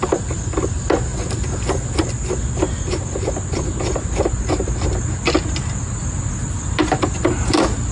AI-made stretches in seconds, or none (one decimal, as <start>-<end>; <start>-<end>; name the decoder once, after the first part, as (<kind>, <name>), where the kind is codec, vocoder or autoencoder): none